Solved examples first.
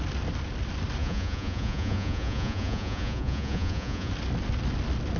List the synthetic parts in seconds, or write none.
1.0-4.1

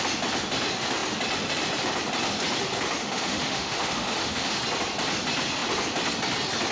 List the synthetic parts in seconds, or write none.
3.0-4.6

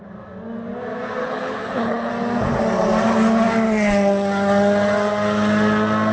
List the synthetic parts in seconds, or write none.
1.2-2.1

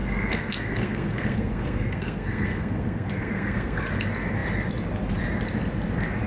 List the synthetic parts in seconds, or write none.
0.0-3.8

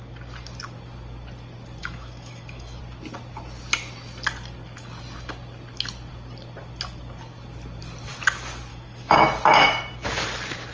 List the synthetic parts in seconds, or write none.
1.8-2.8; 8.7-9.3

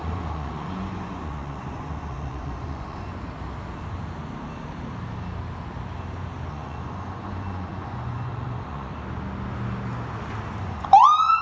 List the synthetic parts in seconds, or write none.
0.0-3.1; 6.5-8.9; 10.6-11.4

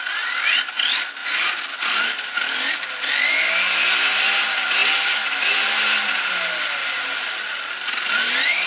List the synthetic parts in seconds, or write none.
4.8-6.3; 6.8-8.7

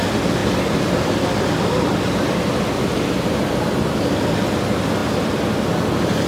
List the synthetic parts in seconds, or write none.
0.4-4.2; 5.0-5.6